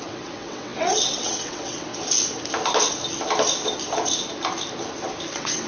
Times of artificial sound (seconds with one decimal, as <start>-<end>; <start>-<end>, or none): 0.0-1.9; 5.3-5.7